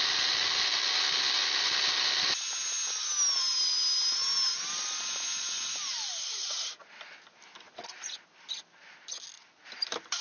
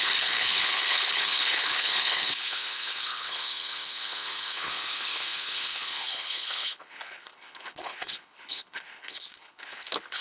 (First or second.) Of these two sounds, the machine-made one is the second